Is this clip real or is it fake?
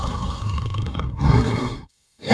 fake